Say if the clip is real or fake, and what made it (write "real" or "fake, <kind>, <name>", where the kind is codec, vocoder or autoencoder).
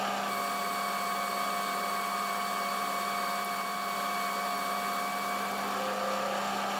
real